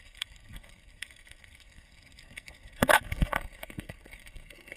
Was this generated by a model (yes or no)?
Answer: yes